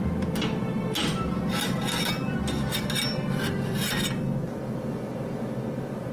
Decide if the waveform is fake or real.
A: real